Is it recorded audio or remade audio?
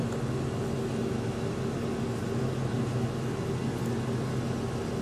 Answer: recorded